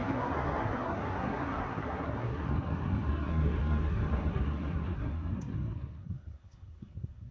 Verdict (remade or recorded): remade